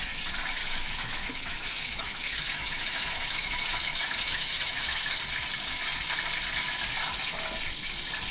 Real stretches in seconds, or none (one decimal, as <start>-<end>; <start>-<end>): 0.0-0.6; 5.2-8.3